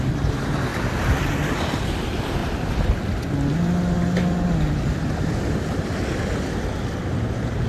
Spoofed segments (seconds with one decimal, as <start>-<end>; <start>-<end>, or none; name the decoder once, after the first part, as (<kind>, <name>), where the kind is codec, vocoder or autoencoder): 0.0-0.7 (vocoder, BigVGAN v2); 2.0-2.4; 7.0-7.7

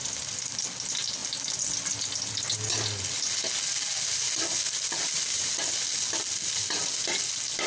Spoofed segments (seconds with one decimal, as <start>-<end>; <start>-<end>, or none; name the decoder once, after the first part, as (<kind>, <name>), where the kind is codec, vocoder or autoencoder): none

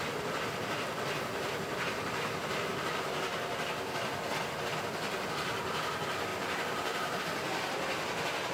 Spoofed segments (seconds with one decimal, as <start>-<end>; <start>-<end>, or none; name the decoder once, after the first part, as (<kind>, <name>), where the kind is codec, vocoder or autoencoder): 6.3-7.2 (vocoder, BigVGAN v2)

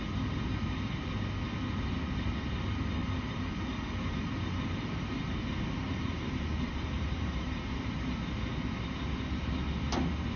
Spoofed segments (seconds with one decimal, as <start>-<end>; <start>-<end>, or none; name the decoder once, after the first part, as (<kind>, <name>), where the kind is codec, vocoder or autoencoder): 3.0-8.2 (vocoder, BigVGAN v2)

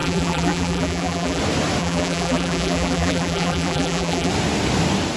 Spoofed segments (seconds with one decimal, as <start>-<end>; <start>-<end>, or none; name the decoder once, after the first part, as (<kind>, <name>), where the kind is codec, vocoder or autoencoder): 0.0-1.4 (vocoder, BigVGAN v2); 1.8-4.3

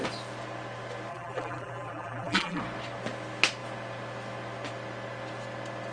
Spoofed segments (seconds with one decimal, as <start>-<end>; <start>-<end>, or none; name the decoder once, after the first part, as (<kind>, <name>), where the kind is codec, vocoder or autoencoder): 1.1-2.6 (vocoder, BigVGAN v2)

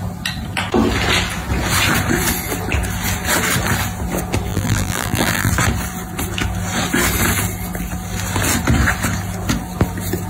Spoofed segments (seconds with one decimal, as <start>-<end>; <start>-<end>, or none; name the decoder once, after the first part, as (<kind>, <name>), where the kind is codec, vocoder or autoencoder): 4.5-5.5 (vocoder, BigVGAN v2)

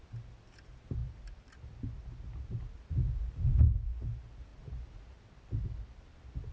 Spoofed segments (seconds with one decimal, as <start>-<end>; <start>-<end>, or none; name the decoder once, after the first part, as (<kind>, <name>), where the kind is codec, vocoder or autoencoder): none